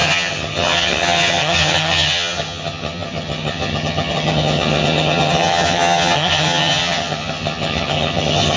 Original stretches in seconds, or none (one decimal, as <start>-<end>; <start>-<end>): none